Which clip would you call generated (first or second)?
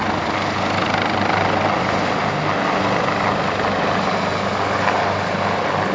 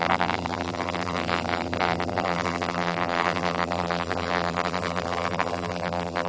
second